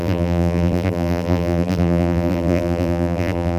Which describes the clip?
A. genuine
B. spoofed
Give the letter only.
B